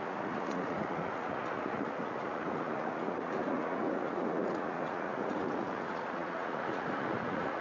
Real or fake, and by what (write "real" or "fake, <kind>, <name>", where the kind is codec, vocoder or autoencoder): fake, vocoder, Vocos